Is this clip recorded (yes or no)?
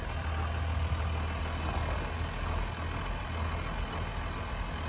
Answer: yes